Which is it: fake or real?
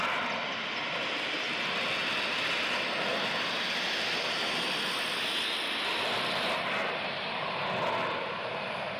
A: real